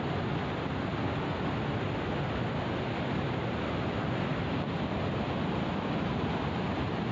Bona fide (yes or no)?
yes